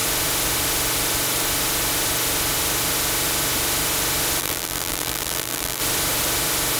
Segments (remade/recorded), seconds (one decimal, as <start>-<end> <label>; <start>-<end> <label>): 0.0-4.4 recorded; 4.4-5.8 remade; 5.8-6.8 recorded